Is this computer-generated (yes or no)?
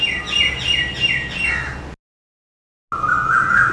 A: no